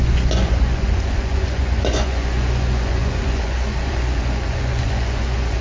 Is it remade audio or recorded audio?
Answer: remade